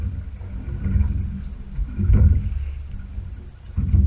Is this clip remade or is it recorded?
recorded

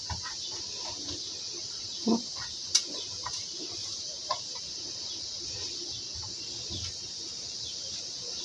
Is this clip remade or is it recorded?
recorded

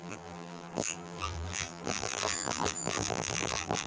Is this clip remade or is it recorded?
remade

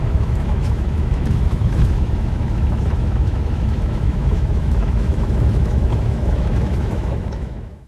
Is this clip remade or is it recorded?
remade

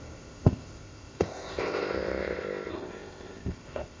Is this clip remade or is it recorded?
remade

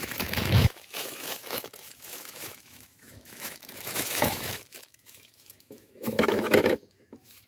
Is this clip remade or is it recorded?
remade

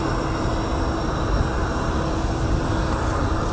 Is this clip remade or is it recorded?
recorded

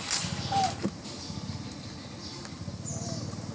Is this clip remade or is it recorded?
recorded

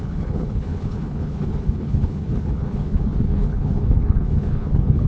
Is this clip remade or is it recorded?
remade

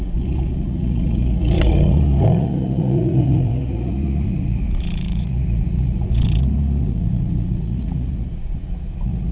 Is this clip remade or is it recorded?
remade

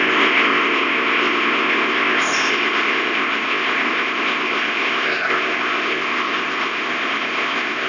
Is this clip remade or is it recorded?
remade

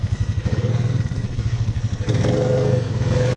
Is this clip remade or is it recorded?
remade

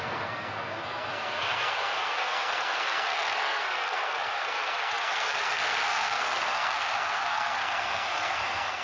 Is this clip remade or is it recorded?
remade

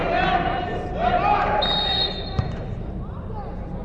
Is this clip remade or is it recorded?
remade